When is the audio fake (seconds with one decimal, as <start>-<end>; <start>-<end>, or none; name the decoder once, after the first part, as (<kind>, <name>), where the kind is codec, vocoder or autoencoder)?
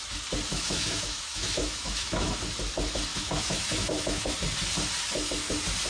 0.5-2.4 (autoencoder, DAC-VAE); 3.1-4.3